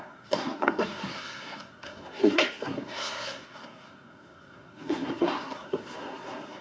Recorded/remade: remade